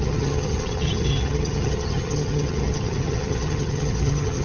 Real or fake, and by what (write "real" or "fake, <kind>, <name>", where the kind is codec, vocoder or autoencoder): fake, vocoder, HiFi-GAN